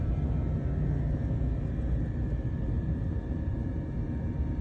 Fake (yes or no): yes